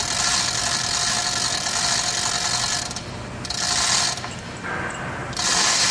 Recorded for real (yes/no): yes